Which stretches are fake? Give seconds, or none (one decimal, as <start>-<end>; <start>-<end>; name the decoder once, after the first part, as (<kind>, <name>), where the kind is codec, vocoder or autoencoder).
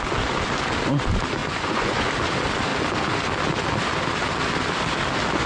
1.4-2.1 (vocoder, Vocos)